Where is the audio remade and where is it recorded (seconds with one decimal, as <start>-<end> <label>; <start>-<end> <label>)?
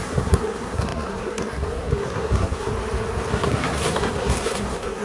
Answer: 0.0-2.7 remade; 2.7-3.3 recorded; 3.3-5.0 remade